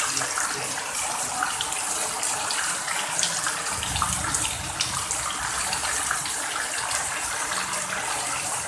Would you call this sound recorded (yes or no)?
yes